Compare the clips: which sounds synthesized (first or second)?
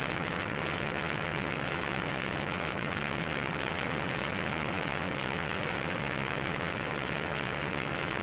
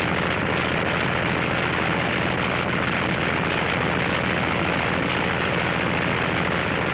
first